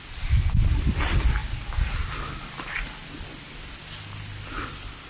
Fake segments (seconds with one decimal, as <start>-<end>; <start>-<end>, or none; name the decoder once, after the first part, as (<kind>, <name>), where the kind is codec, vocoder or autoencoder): none